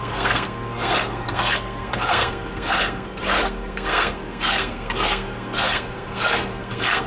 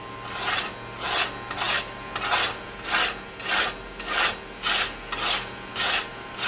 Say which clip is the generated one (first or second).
first